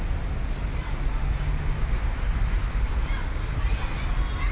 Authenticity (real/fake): real